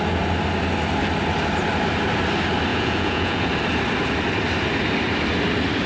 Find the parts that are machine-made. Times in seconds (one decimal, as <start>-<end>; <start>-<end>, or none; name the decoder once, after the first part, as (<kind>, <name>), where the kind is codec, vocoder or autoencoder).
2.7-3.5 (vocoder, Vocos)